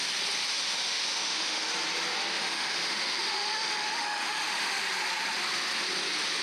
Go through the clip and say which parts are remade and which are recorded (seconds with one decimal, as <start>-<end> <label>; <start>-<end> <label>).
0.0-0.5 recorded; 0.5-1.7 remade; 1.7-2.3 recorded; 2.3-4.8 remade; 4.8-6.4 recorded